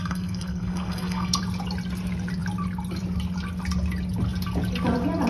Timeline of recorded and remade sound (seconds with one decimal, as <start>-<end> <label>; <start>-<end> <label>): 0.0-1.4 remade; 1.4-5.3 recorded